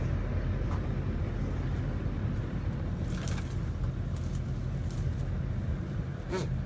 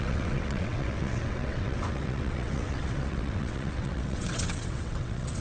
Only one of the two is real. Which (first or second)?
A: first